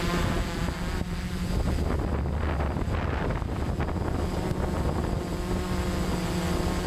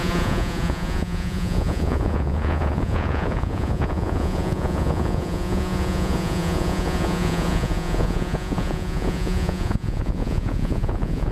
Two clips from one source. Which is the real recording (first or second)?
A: first